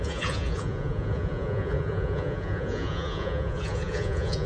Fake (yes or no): yes